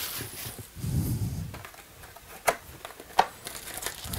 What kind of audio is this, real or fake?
real